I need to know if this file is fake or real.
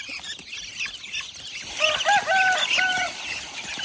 real